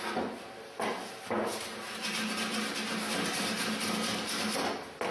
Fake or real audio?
real